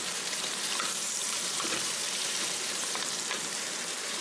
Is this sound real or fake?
fake